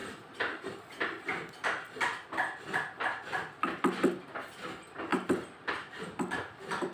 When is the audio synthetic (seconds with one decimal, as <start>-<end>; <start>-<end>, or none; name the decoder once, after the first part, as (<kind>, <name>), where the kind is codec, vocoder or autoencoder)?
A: 0.0-0.7 (vocoder, BigVGAN v2); 5.1-6.0